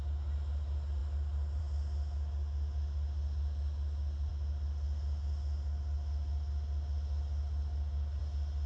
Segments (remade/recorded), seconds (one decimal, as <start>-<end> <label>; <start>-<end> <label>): 0.0-8.7 recorded